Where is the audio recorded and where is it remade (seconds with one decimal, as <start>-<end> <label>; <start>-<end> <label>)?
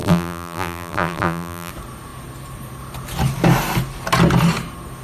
0.0-1.7 remade; 1.7-5.0 recorded